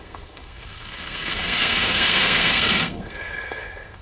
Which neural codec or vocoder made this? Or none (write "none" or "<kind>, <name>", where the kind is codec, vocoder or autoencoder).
codec, SNAC